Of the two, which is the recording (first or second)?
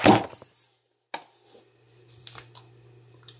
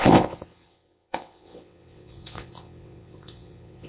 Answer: first